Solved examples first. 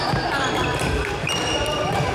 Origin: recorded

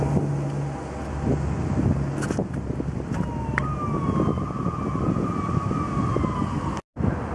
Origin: recorded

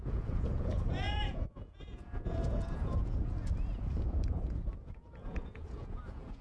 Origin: remade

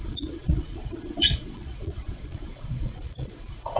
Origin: remade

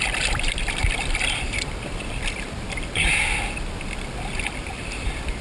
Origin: remade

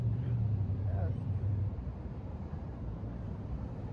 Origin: remade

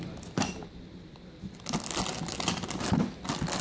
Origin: recorded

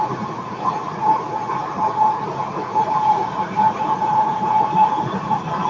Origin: remade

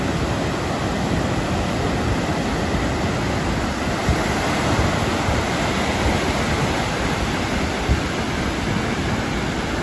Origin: recorded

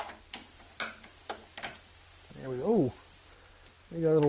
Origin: recorded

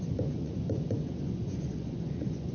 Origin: remade